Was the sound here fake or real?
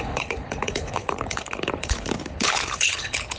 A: fake